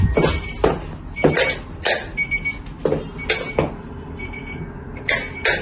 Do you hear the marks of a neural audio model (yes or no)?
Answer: no